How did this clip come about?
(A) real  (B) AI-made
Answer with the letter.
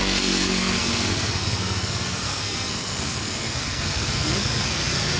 B